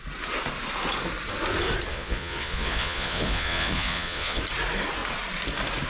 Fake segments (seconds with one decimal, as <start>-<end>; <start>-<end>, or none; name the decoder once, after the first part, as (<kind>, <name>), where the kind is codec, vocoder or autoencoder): 1.9-4.4 (vocoder, Vocos)